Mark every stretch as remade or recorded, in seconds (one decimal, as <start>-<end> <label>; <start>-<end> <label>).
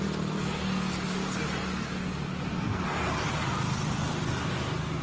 0.0-2.5 recorded; 2.5-3.0 remade; 3.0-5.0 recorded